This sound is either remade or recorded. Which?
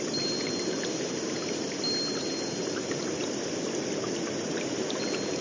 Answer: recorded